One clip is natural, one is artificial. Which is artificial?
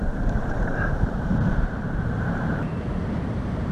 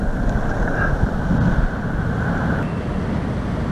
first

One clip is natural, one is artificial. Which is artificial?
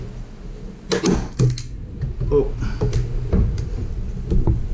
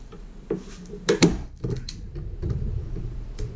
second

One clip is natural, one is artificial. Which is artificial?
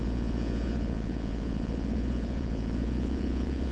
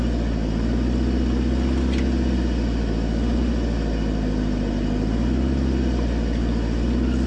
first